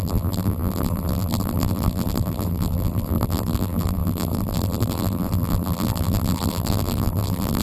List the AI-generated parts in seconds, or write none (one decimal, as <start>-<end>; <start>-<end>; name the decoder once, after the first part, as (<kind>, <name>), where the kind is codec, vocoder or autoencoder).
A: 0.0-7.6 (vocoder, BigVGAN v2)